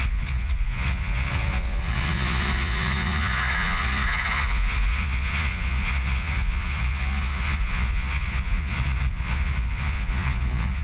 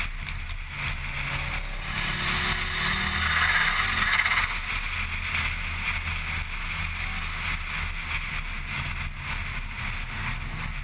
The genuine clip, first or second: second